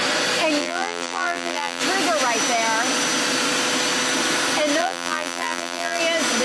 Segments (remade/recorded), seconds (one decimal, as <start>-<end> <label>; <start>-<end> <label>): 0.0-0.6 recorded; 0.6-1.8 remade; 1.8-4.8 recorded; 4.8-6.0 remade; 6.0-6.4 recorded